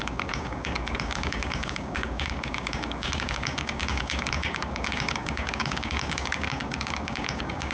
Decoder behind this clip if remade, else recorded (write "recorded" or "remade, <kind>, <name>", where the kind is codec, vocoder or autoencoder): remade, codec, DAC